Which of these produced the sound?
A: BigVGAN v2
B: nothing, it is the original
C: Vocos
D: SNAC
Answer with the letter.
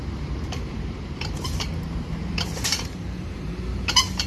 A